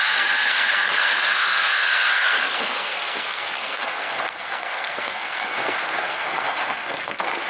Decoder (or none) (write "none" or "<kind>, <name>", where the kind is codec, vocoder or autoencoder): codec, SNAC